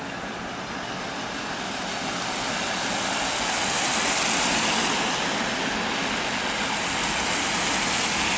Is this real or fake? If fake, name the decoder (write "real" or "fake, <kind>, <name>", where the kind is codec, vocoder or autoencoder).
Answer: real